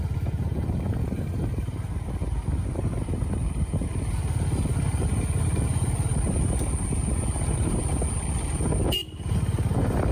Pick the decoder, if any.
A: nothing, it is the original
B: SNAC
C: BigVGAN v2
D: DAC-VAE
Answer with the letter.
A